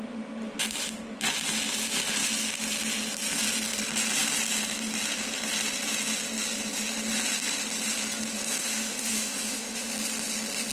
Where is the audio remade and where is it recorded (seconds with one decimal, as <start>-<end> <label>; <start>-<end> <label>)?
0.0-8.6 recorded; 8.6-9.9 remade; 9.9-10.7 recorded